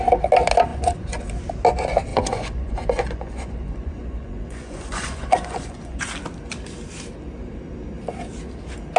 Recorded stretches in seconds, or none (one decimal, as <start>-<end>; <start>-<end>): 0.0-0.7; 1.2-2.1; 6.0-9.0